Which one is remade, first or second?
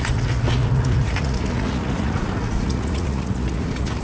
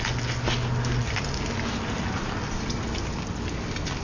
first